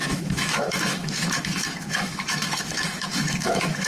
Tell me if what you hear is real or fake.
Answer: fake